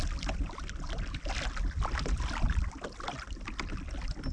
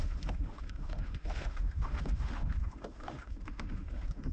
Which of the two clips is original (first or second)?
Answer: first